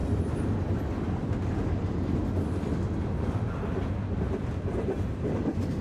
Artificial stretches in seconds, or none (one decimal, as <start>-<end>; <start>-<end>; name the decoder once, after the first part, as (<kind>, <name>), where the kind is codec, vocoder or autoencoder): 3.5-5.8 (vocoder, BigVGAN v2)